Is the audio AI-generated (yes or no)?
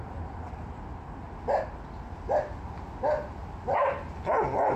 no